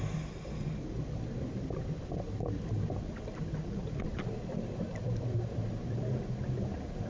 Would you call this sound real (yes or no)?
yes